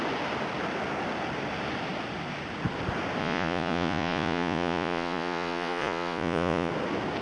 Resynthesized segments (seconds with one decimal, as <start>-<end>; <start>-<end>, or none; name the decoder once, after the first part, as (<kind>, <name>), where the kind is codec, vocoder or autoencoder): 3.2-6.7 (vocoder, Vocos)